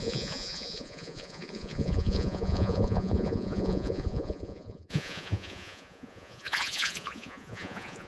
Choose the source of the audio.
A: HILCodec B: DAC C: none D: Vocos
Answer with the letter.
D